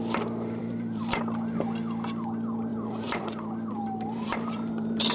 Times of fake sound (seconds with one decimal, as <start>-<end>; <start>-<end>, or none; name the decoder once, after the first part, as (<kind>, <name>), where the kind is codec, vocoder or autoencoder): 0.6-1.2 (vocoder, BigVGAN v2); 2.7-5.1